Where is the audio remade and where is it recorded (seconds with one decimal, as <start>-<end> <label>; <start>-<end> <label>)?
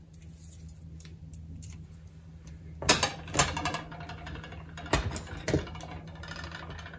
0.0-7.0 recorded